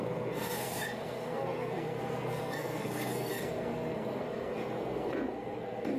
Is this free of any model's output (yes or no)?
no